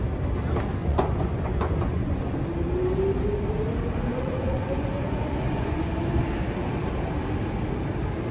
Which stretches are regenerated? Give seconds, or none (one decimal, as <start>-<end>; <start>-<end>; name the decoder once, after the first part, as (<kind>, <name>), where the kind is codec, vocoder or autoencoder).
0.8-2.4 (vocoder, Vocos); 4.1-5.9